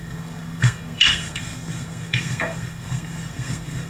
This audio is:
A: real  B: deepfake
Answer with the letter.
B